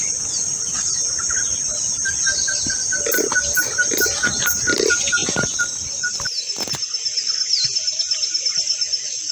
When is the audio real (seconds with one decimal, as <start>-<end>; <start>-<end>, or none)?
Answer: 0.0-9.3